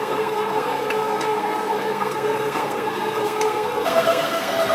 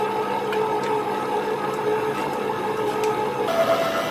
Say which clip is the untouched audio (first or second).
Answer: second